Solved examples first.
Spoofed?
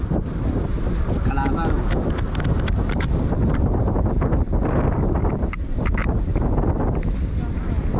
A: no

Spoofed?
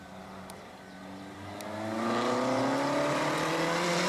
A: no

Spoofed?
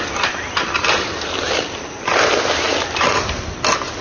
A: no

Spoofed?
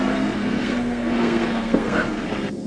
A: yes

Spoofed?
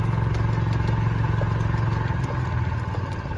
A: no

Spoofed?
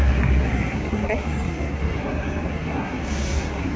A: yes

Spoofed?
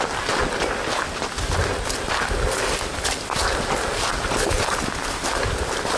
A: no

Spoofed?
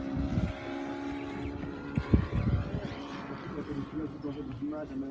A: no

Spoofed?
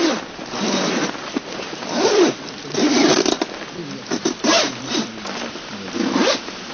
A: no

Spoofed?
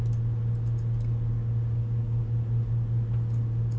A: no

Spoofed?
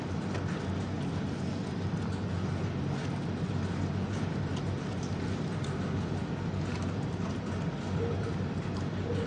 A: no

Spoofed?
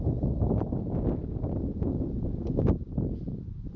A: no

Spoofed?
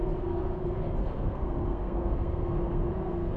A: yes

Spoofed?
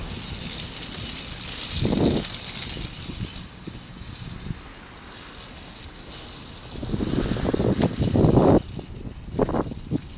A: no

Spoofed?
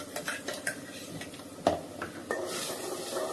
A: no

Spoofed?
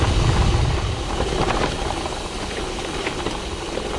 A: no